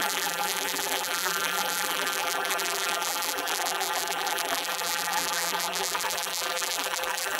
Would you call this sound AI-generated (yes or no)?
yes